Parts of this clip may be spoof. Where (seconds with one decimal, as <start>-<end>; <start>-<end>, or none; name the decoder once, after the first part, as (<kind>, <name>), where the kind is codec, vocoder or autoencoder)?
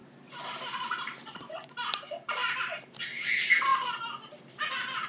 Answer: 0.0-2.8 (vocoder, BigVGAN v2)